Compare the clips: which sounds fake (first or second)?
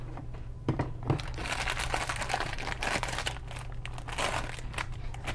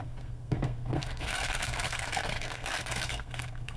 second